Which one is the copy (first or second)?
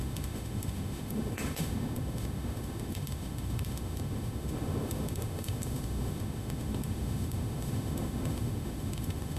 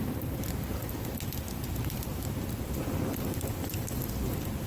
first